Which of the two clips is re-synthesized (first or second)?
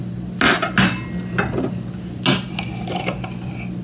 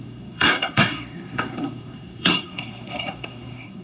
second